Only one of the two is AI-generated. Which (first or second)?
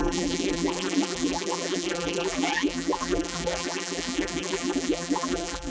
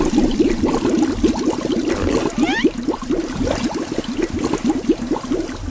first